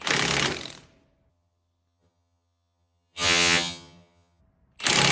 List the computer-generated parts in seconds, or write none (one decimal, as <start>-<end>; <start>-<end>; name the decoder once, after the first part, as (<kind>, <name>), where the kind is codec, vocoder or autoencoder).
1.3-4.4 (vocoder, HiFi-GAN)